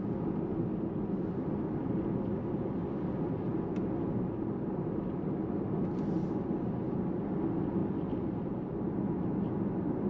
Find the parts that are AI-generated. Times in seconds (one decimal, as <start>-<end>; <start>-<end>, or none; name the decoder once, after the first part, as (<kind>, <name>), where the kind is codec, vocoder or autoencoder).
7.8-8.9 (vocoder, BigVGAN v2)